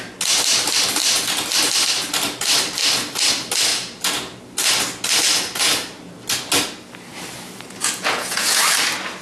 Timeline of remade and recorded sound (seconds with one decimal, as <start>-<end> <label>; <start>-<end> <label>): 0.0-3.7 recorded; 3.7-4.4 remade; 4.4-7.8 recorded; 7.8-8.6 remade; 8.6-9.2 recorded